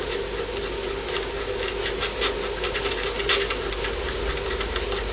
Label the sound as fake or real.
real